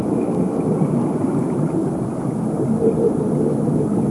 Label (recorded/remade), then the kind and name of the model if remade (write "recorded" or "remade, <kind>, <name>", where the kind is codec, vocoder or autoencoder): recorded